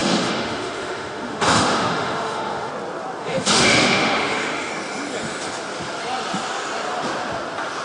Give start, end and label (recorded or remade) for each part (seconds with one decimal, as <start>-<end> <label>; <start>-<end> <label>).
0.0-2.7 remade; 2.7-3.2 recorded; 3.2-4.7 remade; 4.7-7.8 recorded